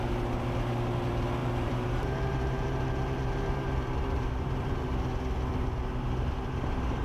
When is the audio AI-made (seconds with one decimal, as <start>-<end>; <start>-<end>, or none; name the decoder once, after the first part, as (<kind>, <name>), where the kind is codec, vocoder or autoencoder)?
1.4-4.9 (vocoder, BigVGAN v2); 5.5-7.0